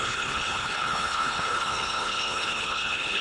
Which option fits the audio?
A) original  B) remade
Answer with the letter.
B